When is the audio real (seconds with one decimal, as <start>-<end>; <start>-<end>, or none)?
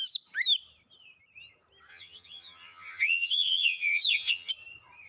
0.0-1.9; 4.5-5.1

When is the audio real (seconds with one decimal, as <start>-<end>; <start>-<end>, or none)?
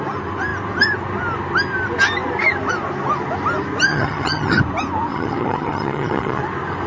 0.0-3.9; 4.6-5.1; 6.4-6.9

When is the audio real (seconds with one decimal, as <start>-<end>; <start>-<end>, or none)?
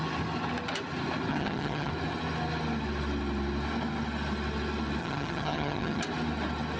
0.0-1.3; 1.9-5.0; 6.0-6.8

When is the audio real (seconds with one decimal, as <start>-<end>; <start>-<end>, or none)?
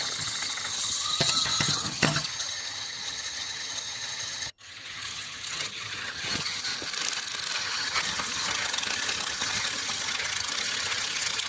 6.7-7.6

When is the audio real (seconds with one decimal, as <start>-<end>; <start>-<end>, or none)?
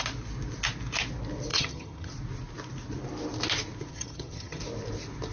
0.0-1.5; 2.1-3.9; 4.6-5.3